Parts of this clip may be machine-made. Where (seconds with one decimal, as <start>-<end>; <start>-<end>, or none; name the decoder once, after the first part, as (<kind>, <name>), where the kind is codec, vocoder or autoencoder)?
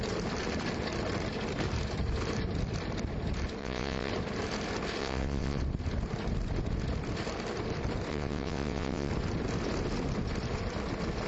3.6-4.1 (vocoder, WaveNeXt); 5.0-5.6; 8.1-9.1